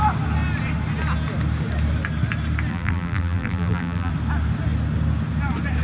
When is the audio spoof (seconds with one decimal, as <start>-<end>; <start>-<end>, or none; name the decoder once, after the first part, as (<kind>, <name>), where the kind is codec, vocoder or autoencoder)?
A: 2.7-4.1 (vocoder, BigVGAN v2)